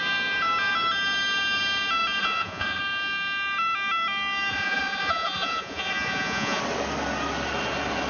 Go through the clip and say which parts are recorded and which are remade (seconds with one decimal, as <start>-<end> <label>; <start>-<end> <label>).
0.0-2.2 recorded; 2.2-2.8 remade; 2.8-4.5 recorded; 4.5-6.6 remade; 6.6-8.1 recorded